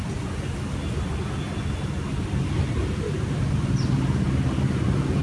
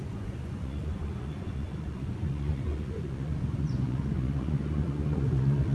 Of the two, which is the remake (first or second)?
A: second